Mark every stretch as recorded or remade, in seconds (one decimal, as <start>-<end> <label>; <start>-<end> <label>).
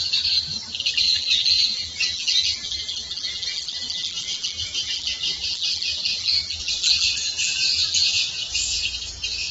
0.0-0.9 recorded; 0.9-8.2 remade; 8.2-9.5 recorded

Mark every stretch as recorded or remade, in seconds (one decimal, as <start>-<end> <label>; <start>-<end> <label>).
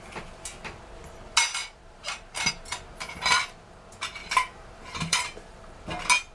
0.0-1.6 recorded; 1.6-2.5 remade; 2.5-4.2 recorded; 4.2-5.6 remade; 5.6-6.3 recorded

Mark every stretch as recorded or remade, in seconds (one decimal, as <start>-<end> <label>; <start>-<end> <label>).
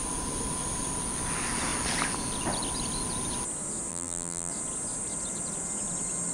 0.0-3.9 recorded; 3.9-4.5 remade; 4.5-6.3 recorded